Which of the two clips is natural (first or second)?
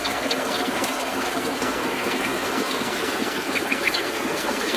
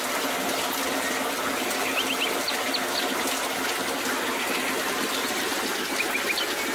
second